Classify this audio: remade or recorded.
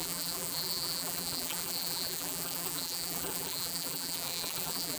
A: remade